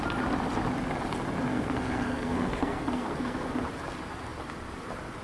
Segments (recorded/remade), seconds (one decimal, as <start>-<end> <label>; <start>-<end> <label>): 0.0-1.5 recorded; 1.5-3.5 remade; 3.5-5.2 recorded